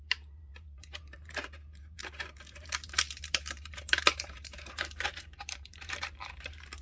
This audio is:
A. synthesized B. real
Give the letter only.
A